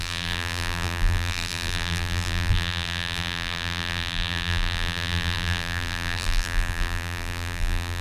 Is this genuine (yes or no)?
no